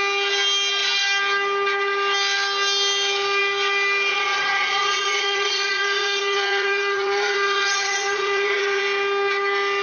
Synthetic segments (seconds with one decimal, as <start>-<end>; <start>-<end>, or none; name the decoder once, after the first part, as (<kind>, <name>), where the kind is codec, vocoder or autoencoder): 4.1-8.8 (vocoder, Vocos)